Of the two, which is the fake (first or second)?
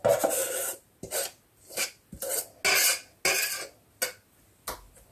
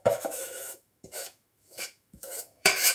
second